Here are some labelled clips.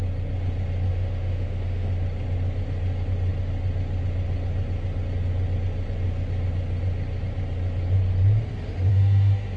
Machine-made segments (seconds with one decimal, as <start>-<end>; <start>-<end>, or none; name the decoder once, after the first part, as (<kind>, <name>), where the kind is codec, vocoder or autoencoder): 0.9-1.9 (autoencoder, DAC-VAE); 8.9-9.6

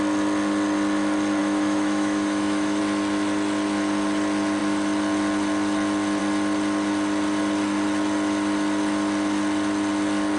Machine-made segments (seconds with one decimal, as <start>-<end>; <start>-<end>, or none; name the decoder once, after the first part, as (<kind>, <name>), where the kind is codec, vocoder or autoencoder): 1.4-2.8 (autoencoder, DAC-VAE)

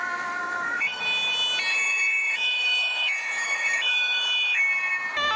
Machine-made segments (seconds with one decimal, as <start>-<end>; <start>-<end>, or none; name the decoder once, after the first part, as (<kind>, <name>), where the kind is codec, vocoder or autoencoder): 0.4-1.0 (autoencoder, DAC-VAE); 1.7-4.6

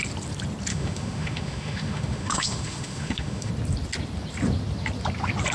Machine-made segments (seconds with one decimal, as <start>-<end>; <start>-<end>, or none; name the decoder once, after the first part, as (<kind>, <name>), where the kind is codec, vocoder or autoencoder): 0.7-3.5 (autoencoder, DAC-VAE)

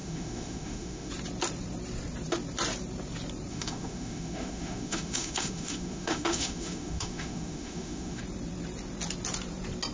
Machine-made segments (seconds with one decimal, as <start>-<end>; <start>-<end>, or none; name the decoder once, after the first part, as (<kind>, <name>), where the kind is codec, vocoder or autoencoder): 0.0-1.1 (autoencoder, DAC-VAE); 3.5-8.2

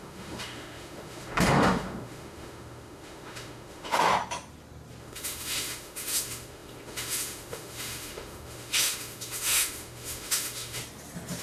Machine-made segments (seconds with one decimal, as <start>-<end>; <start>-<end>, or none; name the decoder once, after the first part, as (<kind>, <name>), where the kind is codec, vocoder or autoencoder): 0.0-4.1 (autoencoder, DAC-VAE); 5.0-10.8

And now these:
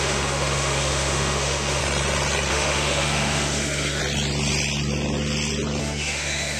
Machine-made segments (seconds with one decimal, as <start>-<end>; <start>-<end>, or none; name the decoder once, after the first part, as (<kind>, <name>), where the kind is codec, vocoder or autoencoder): 0.0-1.8 (autoencoder, DAC-VAE); 2.5-4.0; 5.8-6.6